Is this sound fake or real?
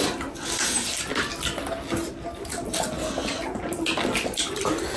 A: real